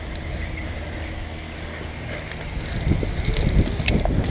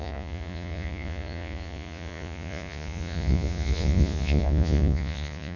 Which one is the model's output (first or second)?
second